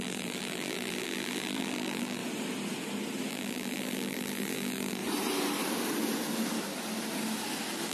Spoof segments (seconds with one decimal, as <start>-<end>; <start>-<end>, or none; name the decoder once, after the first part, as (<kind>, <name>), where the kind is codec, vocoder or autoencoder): 0.0-2.2 (vocoder, BigVGAN v2); 3.3-5.0